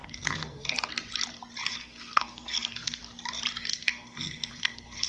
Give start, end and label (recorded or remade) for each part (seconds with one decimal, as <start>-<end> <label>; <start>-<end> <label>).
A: 0.0-0.9 remade; 0.9-1.7 recorded; 1.7-3.0 remade; 3.0-3.7 recorded; 3.7-5.1 remade